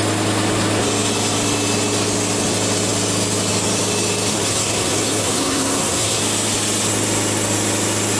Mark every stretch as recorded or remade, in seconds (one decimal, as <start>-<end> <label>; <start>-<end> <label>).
0.0-4.3 recorded; 4.3-6.2 remade; 6.2-8.2 recorded